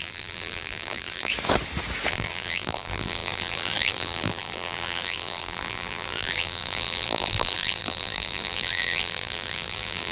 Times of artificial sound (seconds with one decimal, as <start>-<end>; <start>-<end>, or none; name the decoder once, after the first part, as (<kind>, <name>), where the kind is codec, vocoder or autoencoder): 0.0-1.3 (vocoder, BigVGAN v2); 2.1-10.1